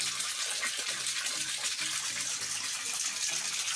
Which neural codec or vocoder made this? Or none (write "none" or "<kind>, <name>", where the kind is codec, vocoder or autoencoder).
none